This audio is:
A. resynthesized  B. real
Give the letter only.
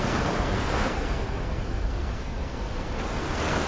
A